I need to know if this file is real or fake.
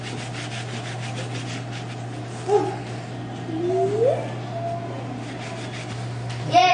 real